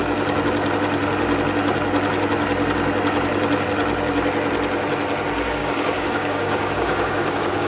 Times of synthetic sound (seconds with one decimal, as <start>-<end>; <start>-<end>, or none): 5.6-7.7